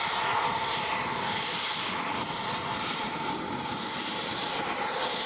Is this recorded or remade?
recorded